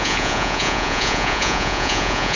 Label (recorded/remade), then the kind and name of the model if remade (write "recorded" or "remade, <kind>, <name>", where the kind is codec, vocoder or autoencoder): remade, vocoder, Vocos